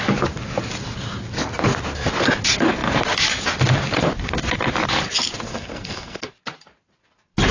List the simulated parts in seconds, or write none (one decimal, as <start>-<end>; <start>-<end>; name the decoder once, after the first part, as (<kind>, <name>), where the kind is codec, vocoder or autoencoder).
5.5-6.3 (codec, SNAC)